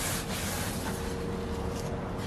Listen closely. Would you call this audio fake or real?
real